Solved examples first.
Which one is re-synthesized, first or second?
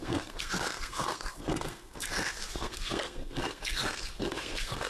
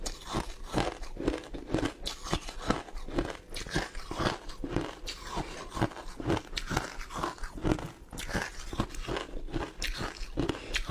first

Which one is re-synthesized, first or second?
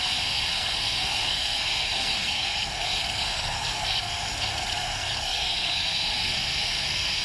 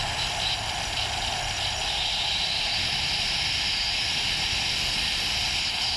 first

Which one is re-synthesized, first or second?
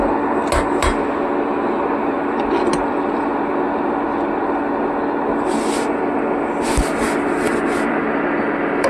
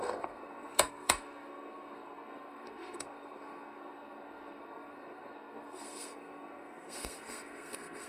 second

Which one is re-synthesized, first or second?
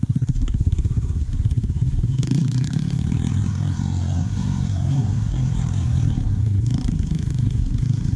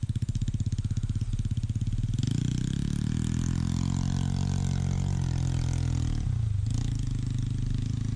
first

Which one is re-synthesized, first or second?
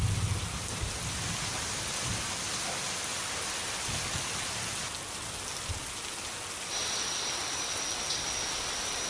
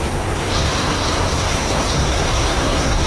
second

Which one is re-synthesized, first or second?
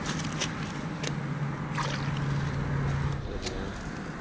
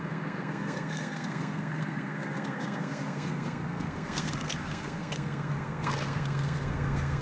second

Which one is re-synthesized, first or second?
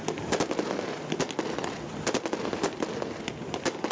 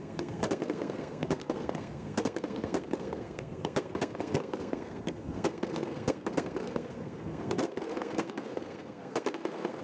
second